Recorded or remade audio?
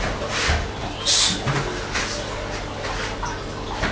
recorded